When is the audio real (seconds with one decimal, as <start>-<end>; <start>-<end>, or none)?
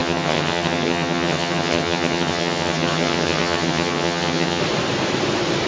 4.6-5.7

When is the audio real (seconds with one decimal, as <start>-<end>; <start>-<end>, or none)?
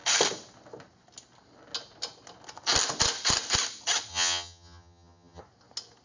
0.0-4.1; 5.4-6.0